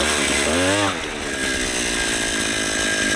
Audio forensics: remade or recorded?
recorded